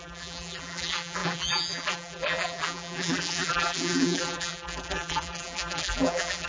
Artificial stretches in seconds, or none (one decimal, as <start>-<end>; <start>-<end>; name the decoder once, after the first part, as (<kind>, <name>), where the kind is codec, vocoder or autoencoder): 0.0-6.5 (vocoder, BigVGAN v2)